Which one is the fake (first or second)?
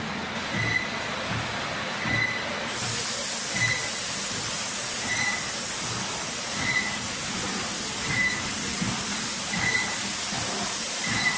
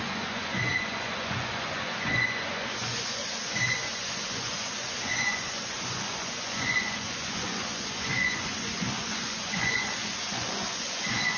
second